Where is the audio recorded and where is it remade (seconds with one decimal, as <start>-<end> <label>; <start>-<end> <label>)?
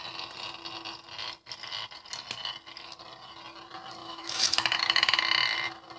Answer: 0.0-4.0 recorded; 4.0-5.2 remade; 5.2-6.0 recorded